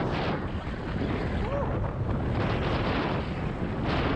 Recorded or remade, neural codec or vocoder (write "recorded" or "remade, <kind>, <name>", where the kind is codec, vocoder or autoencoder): recorded